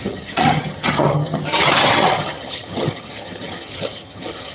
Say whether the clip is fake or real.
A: fake